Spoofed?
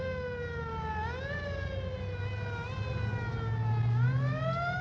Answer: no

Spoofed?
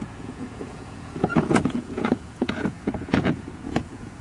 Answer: yes